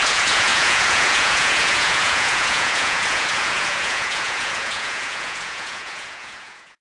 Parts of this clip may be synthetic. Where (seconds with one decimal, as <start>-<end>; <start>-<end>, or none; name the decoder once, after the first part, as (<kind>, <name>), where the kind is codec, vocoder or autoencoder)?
0.0-6.8 (vocoder, Vocos)